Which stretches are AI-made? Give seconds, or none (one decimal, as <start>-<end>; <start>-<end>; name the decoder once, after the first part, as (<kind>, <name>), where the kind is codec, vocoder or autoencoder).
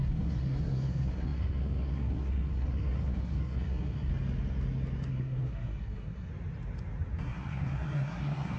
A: 0.0-4.1 (codec, SNAC); 5.1-6.3; 7.2-8.6